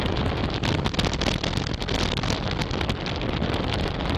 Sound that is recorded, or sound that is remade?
recorded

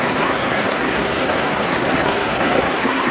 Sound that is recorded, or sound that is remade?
remade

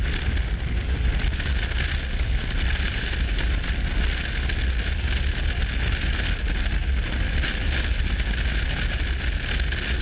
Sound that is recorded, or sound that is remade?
recorded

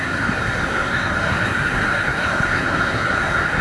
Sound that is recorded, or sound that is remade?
remade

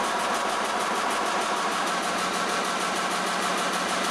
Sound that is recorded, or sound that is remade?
recorded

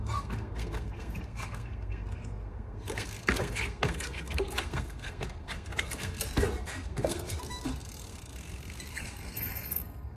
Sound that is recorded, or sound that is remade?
remade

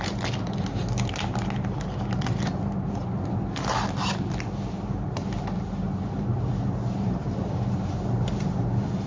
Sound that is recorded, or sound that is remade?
recorded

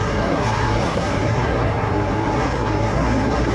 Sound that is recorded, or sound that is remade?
remade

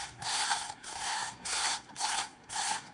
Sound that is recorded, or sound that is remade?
remade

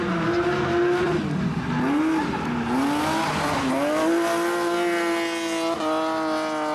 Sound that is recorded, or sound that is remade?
recorded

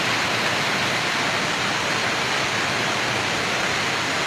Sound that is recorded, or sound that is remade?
recorded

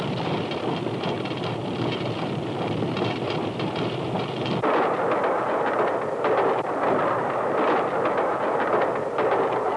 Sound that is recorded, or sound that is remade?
recorded